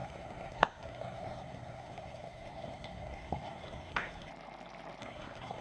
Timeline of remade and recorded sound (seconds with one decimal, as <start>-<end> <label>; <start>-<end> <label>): 0.0-4.3 remade; 4.3-5.0 recorded; 5.0-5.6 remade